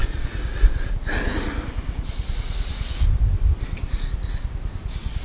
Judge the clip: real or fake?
real